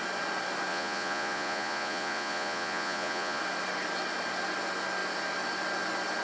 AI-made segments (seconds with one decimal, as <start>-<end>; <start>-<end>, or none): 0.7-3.4